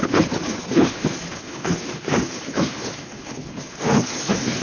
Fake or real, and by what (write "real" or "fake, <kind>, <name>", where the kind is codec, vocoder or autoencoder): fake, codec, HILCodec